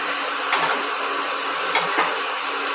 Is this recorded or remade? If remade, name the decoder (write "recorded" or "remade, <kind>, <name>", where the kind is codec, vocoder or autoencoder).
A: recorded